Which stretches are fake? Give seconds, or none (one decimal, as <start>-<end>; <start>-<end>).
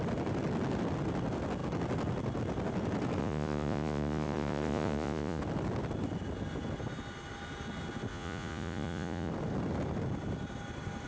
3.2-5.4; 8.1-9.3